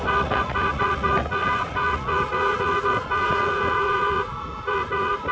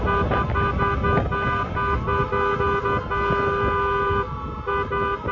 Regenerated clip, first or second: first